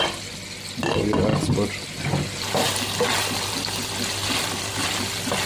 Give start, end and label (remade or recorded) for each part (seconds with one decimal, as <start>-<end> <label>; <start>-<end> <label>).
0.0-5.5 recorded